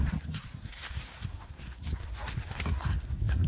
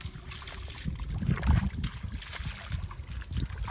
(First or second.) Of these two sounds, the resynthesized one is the first